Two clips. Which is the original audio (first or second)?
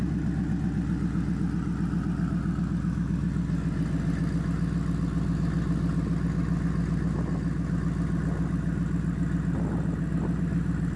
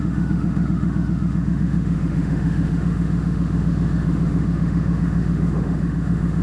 first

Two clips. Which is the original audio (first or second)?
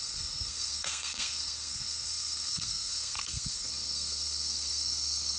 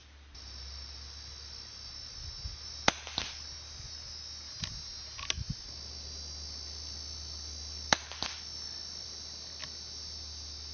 second